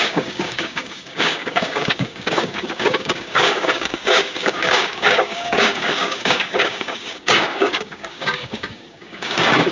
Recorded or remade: remade